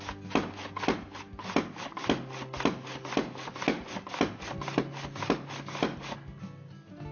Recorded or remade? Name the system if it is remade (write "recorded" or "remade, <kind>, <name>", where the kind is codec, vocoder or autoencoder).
recorded